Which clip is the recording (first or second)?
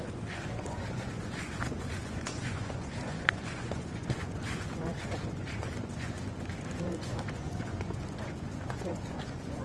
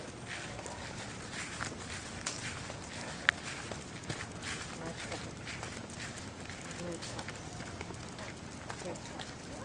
second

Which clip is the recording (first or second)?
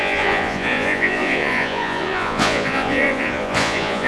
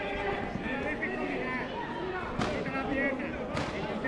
second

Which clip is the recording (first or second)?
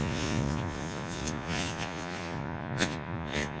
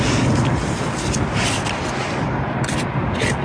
second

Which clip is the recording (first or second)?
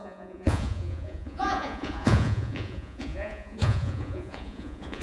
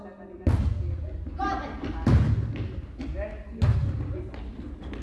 second